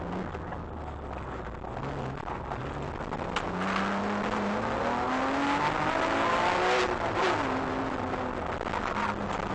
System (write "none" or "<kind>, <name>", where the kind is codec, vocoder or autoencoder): none